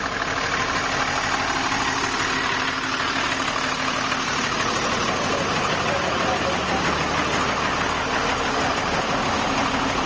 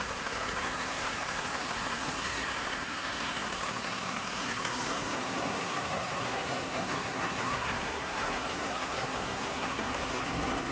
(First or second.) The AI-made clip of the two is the second